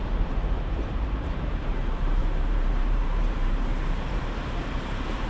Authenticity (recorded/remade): remade